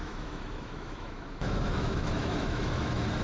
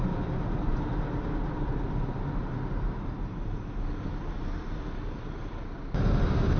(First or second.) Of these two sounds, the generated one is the first